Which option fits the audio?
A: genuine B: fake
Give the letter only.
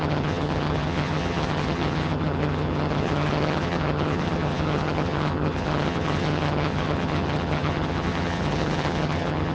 B